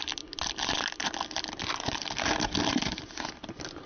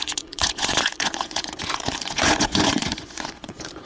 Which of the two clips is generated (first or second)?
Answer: second